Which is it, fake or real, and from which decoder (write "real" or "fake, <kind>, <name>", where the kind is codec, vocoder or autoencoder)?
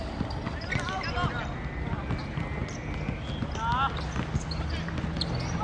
real